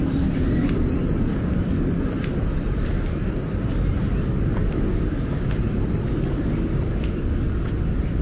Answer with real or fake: real